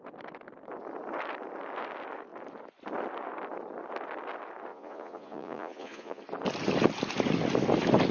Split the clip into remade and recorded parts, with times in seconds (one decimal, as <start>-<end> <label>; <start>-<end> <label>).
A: 0.0-4.7 recorded; 4.7-6.2 remade; 6.2-8.1 recorded